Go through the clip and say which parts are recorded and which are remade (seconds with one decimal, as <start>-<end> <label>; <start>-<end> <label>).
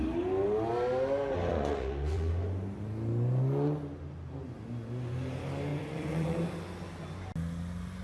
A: 0.0-1.5 recorded; 1.5-2.3 remade; 2.3-5.7 recorded; 5.7-6.5 remade; 6.5-8.0 recorded